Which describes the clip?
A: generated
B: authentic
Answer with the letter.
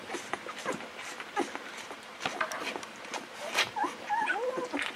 A